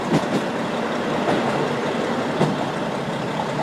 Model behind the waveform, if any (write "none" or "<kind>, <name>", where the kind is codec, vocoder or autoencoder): none